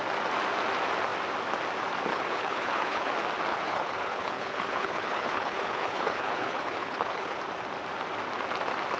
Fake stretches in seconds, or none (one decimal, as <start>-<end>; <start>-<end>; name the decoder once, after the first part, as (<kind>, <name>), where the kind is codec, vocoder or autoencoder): 2.1-3.1 (codec, HILCodec); 3.5-7.4